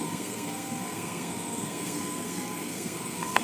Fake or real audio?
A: fake